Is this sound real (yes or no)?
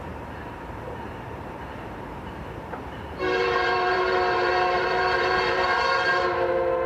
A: no